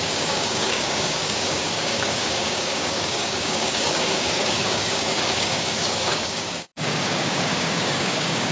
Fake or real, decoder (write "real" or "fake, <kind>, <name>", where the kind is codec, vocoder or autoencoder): fake, codec, DAC